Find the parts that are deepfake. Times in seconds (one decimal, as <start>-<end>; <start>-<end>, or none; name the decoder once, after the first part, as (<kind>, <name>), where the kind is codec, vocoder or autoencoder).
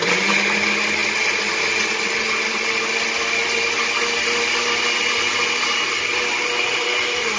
none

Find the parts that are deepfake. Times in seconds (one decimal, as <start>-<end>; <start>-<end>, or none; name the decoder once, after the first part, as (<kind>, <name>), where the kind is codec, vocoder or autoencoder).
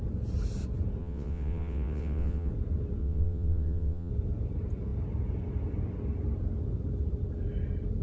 1.0-2.5 (vocoder, WaveNeXt); 3.0-4.1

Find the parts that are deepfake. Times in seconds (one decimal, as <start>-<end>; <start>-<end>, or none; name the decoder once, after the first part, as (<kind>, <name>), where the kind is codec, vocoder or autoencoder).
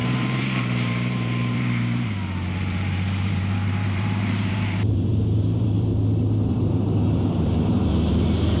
0.0-5.9 (vocoder, BigVGAN v2); 6.5-8.6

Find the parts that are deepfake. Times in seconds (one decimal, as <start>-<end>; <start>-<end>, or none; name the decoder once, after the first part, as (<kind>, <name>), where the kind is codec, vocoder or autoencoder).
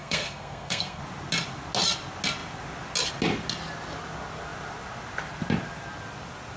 0.0-1.0 (codec, SNAC)